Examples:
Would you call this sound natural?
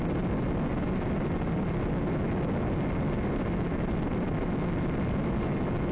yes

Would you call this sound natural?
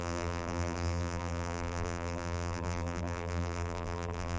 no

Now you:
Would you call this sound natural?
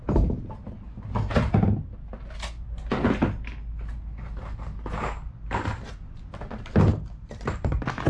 yes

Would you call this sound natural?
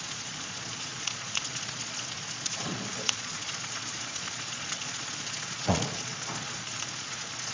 no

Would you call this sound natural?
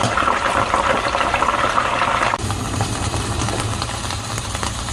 no